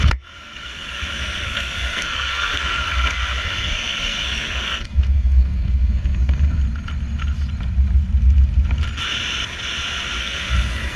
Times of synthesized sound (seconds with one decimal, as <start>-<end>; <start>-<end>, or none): 0.0-6.6; 10.2-11.0